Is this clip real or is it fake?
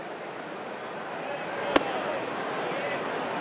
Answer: real